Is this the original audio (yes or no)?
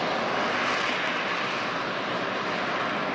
yes